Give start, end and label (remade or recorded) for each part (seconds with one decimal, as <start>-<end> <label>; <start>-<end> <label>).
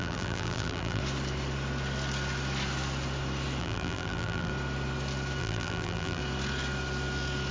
0.0-1.0 remade; 1.0-3.6 recorded; 3.6-4.5 remade; 4.5-5.4 recorded; 5.4-6.2 remade; 6.2-7.5 recorded